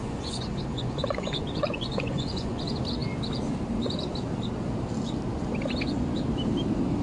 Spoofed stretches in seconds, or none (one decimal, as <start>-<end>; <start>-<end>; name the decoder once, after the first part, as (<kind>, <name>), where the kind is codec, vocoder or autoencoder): 0.0-2.6 (vocoder, Vocos)